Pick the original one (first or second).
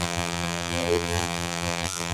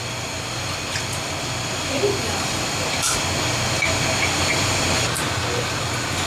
second